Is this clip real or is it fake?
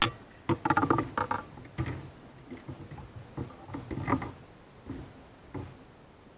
real